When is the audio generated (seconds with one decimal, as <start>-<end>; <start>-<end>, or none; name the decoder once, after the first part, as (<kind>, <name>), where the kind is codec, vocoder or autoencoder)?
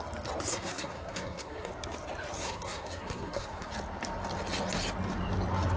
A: 0.5-1.7 (codec, SNAC); 2.4-3.7